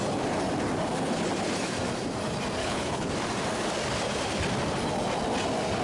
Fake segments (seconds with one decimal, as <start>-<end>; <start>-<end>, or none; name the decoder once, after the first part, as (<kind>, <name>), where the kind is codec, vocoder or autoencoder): 2.6-3.1 (codec, HILCodec)